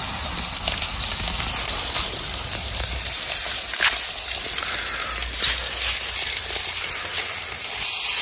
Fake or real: real